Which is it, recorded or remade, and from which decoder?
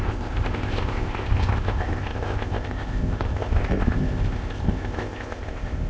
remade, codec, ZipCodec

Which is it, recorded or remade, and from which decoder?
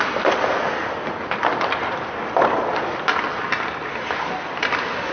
recorded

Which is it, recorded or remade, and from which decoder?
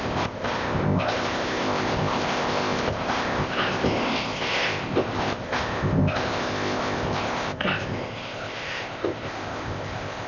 remade, codec, ZipCodec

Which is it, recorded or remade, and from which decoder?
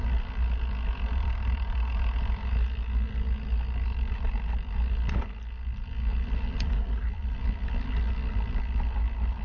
recorded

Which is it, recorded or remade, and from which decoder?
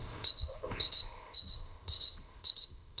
remade, codec, ZipCodec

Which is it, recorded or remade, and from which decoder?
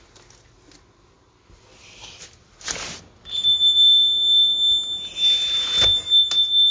recorded